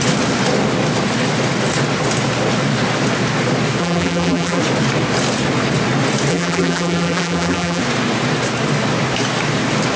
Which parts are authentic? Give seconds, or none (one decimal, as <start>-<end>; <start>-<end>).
0.0-3.8; 4.6-6.3; 7.8-10.0